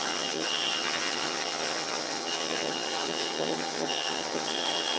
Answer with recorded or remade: remade